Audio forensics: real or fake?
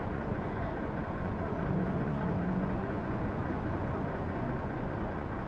fake